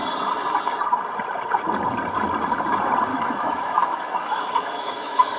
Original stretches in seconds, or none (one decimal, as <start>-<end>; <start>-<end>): 0.0-3.1